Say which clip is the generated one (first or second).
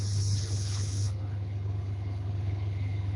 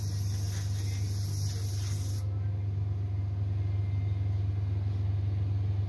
first